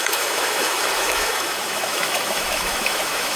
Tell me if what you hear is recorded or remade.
remade